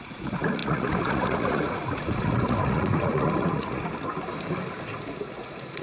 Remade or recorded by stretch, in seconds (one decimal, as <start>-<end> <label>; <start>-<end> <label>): 0.0-3.8 remade; 3.8-5.2 recorded; 5.2-5.8 remade